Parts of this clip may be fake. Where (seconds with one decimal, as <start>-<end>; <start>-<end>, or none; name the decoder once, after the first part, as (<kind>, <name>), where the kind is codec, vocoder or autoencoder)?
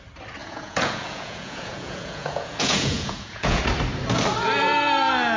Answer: 0.4-3.6 (vocoder, Vocos)